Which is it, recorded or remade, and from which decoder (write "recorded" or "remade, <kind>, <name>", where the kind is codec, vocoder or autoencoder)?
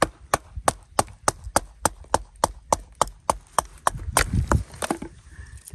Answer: recorded